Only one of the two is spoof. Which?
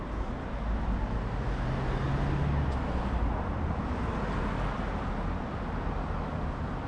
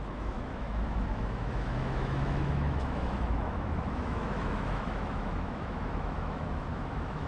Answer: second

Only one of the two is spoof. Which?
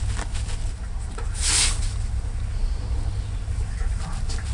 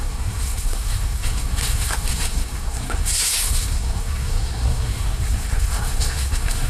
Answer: second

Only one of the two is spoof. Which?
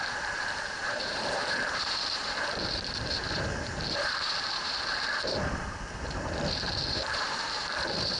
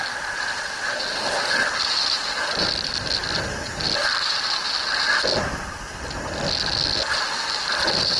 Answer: first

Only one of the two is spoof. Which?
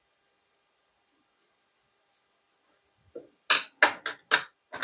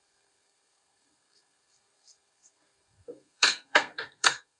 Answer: second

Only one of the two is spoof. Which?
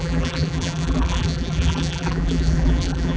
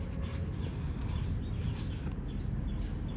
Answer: first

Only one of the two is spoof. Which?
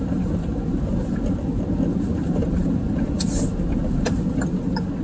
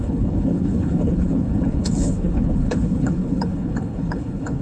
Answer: second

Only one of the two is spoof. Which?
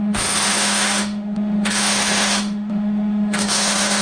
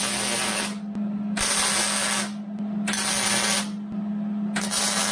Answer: first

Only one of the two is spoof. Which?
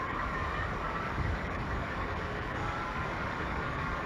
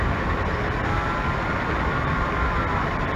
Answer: first